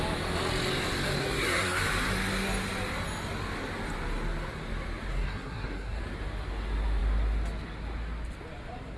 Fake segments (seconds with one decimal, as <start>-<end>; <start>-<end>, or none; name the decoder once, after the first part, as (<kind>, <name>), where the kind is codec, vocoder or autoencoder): 1.2-1.8 (codec, SNAC); 5.1-6.0

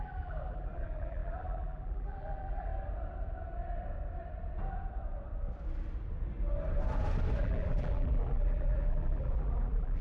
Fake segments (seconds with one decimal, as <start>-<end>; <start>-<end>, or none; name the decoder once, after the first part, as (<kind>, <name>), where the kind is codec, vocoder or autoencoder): 0.0-2.7 (vocoder, BigVGAN v2); 7.4-10.0